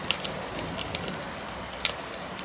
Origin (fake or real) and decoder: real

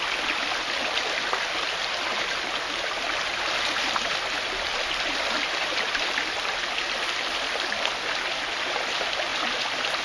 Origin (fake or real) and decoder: real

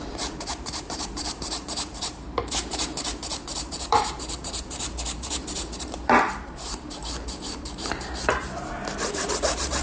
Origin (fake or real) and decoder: fake, vocoder, BigVGAN v2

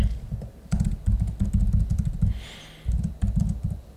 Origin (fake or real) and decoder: real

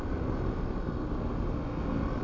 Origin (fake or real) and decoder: real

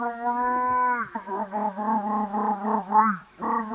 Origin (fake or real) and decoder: fake, autoencoder, DAC-VAE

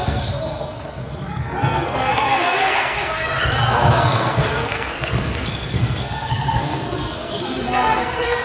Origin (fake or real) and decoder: fake, codec, SNAC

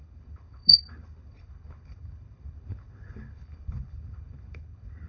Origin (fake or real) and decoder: fake, codec, HILCodec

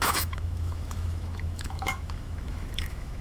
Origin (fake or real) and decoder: fake, autoencoder, DAC-VAE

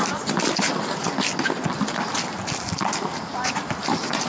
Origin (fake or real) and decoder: real